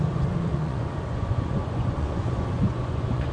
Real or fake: fake